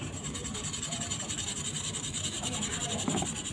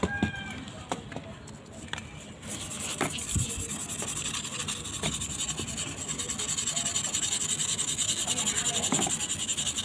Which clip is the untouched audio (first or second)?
second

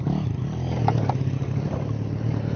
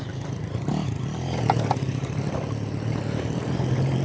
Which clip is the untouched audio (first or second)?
first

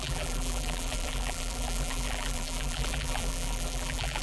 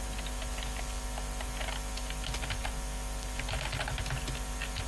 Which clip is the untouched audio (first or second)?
second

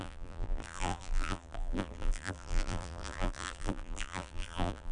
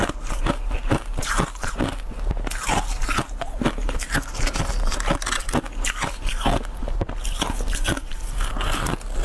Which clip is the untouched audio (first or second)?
second